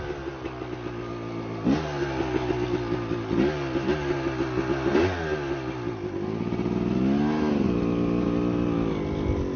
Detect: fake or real real